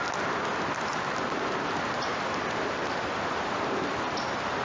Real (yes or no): yes